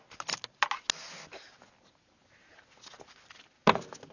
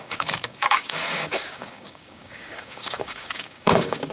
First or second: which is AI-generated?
second